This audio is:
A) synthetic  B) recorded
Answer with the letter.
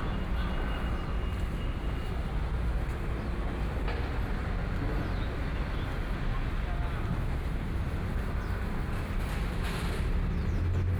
B